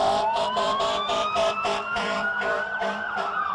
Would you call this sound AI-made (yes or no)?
yes